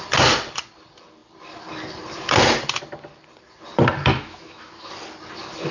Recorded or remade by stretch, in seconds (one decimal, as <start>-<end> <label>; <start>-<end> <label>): 0.0-4.1 recorded; 4.1-4.9 remade; 4.9-5.7 recorded